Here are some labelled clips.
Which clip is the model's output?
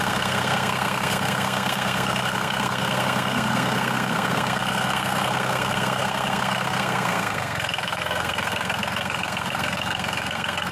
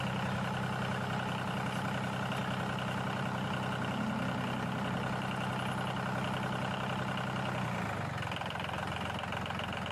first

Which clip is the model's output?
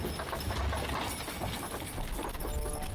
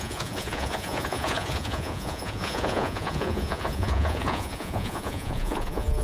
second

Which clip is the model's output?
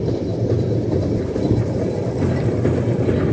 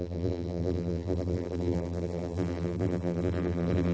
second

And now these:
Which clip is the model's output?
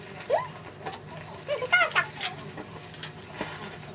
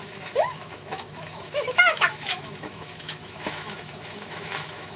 second